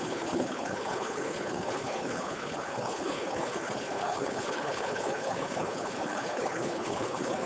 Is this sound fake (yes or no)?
yes